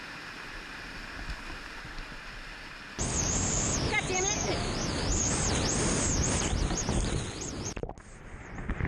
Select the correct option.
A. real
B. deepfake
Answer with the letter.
A